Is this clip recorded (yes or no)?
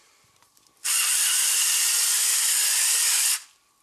yes